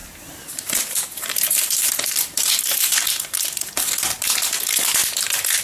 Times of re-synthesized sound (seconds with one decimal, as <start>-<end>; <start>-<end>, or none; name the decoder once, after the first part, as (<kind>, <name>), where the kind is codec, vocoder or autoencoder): 0.0-3.2 (vocoder, BigVGAN v2)